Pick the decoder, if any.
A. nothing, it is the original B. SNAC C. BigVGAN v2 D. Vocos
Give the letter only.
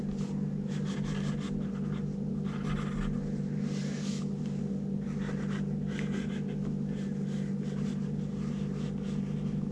A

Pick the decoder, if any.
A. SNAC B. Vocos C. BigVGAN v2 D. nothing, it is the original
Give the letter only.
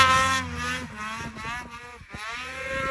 D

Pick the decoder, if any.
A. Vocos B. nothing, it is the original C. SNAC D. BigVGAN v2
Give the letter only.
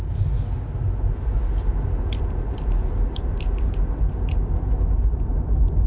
B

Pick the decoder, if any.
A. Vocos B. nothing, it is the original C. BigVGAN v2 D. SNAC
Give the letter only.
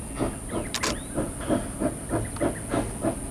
B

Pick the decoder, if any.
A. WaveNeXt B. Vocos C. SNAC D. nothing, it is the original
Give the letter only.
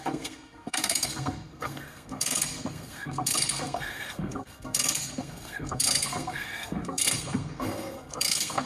C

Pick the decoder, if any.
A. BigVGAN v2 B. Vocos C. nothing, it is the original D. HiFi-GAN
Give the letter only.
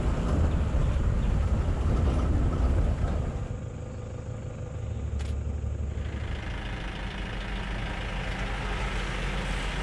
C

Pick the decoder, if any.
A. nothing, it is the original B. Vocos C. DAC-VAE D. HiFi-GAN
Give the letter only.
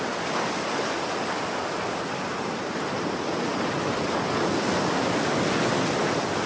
A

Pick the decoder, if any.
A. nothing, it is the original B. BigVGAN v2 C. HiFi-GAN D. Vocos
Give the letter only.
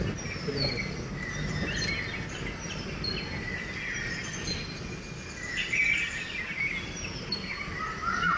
A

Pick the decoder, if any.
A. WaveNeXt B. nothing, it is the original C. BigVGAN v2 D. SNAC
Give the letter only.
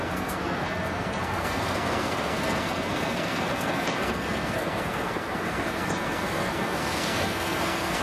D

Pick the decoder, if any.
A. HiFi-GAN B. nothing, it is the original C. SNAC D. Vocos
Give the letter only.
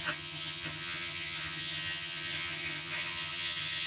A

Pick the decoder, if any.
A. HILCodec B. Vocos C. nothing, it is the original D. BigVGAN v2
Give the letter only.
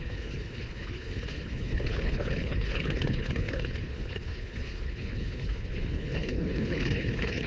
A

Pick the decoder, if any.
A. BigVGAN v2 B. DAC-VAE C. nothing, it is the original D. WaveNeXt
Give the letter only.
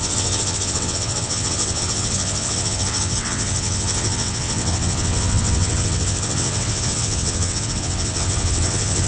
D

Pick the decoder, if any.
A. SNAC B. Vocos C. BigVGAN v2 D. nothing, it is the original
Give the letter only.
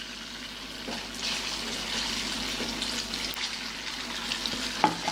D